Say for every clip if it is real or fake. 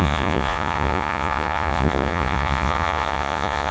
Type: fake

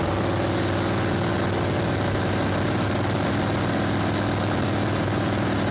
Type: real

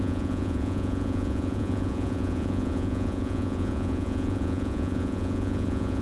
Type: fake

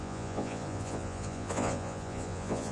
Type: fake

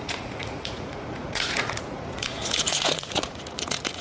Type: fake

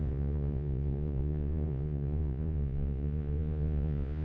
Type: fake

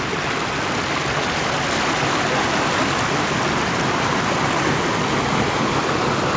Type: real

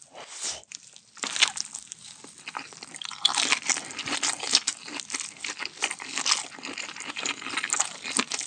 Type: real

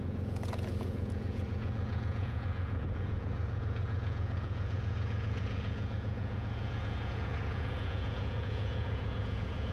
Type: fake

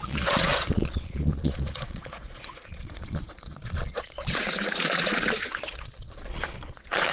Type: fake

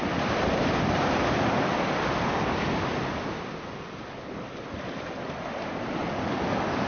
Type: real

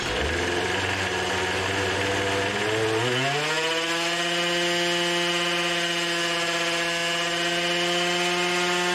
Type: real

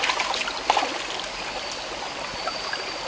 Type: real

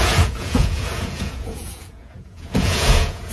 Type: fake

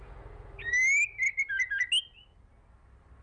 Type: real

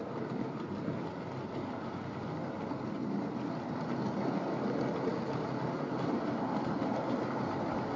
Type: real